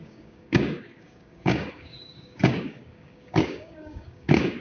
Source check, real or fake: fake